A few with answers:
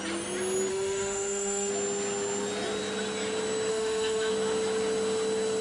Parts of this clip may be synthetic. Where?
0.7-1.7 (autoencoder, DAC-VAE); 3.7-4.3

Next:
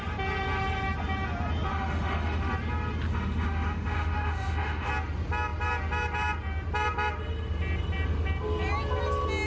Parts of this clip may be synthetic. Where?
1.7-2.5 (autoencoder, DAC-VAE); 3.1-4.9

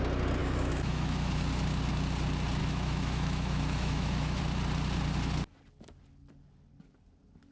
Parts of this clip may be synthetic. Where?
0.4-1.4 (autoencoder, DAC-VAE); 2.6-4.4

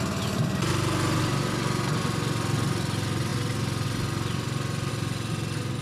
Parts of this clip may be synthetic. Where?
none